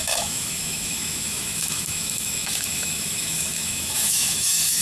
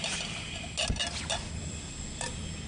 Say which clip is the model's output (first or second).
first